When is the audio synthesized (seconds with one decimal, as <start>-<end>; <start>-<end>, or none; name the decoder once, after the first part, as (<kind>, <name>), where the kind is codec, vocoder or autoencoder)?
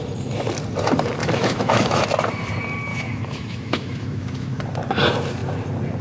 1.2-2.0 (autoencoder, DAC-VAE); 2.9-4.6